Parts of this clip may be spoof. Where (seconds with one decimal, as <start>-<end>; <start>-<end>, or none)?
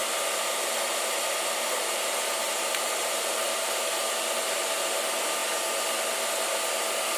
0.0-3.9